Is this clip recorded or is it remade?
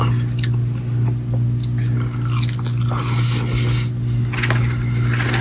recorded